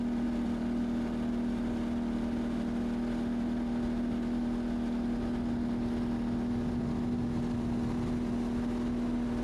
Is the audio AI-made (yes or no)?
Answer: no